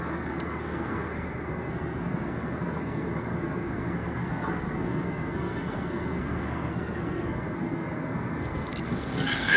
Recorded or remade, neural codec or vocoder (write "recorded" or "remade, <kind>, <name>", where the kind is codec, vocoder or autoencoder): remade, codec, SNAC